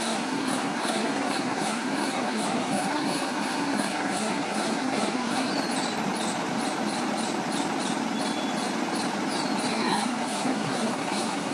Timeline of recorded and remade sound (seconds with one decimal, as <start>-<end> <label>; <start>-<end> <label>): 0.0-5.5 remade; 5.5-9.7 recorded; 9.7-11.5 remade